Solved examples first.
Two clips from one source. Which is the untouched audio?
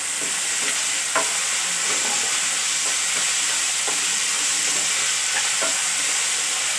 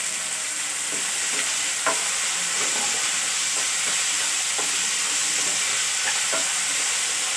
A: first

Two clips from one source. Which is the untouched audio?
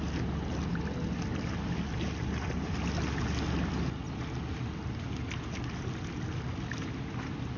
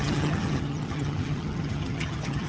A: first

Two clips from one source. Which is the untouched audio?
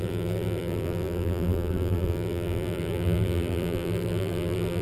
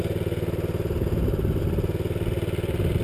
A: second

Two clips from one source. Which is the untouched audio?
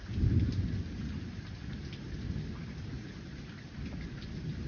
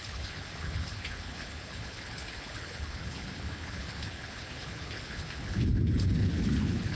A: first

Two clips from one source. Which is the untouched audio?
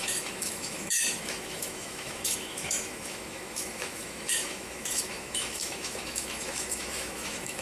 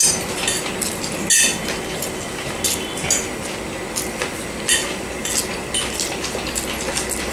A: second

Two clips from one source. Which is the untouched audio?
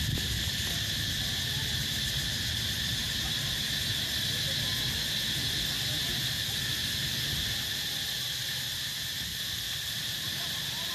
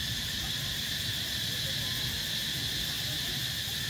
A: first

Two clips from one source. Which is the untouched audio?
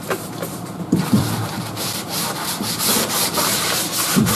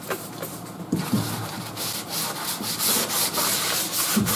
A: second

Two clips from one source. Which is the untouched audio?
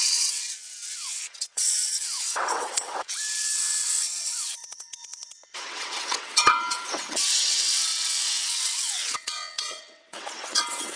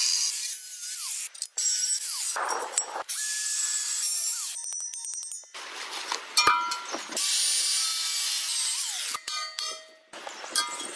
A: second